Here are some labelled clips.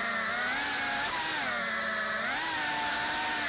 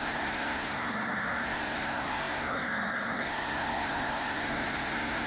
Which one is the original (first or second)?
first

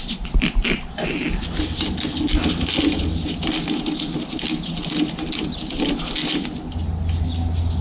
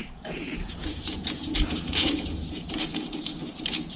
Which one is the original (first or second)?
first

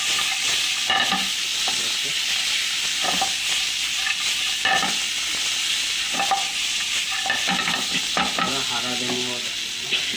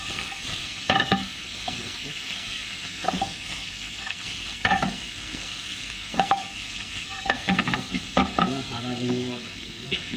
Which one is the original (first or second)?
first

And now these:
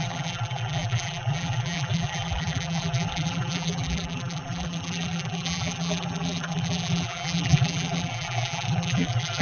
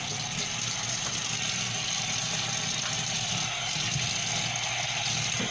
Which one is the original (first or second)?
second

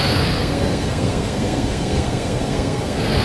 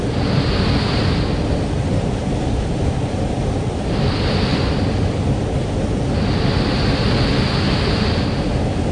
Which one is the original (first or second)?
second